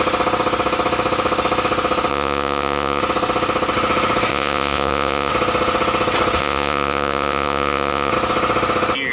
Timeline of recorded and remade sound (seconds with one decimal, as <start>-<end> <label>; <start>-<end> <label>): 0.0-2.1 recorded; 2.1-3.0 remade; 3.0-4.3 recorded; 4.3-5.3 remade; 5.3-6.4 recorded; 6.4-8.1 remade; 8.1-9.1 recorded